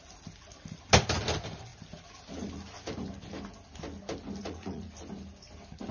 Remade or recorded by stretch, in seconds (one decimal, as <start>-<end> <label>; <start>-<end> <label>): 0.0-4.4 recorded; 4.4-4.9 remade; 4.9-5.9 recorded